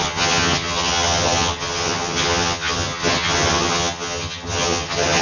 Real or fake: fake